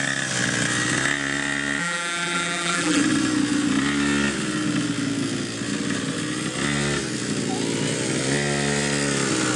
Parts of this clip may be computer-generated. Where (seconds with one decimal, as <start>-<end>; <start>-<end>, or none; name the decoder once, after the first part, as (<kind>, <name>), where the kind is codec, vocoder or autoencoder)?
1.8-3.0 (vocoder, BigVGAN v2)